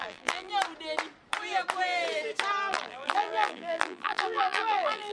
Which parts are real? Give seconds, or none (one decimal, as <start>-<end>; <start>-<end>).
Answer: 0.5-2.7